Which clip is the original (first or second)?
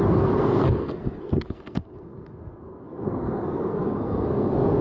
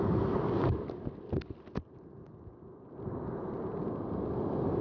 second